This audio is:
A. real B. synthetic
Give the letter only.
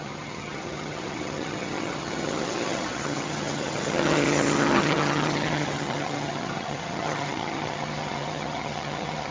B